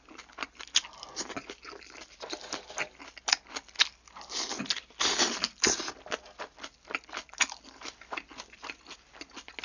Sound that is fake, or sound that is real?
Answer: real